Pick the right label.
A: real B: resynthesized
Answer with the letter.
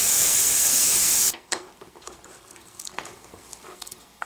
B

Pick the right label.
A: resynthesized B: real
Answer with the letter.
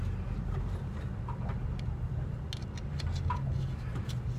B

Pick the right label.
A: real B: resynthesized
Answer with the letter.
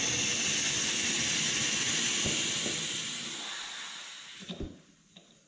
A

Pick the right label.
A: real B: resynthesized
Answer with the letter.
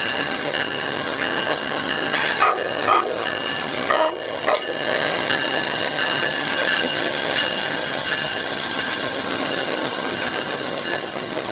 B